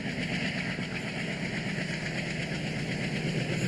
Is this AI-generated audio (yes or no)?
no